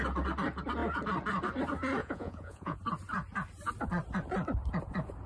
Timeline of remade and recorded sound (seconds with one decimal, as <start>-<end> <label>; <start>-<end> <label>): 0.0-2.0 recorded; 2.0-2.8 remade; 2.8-5.3 recorded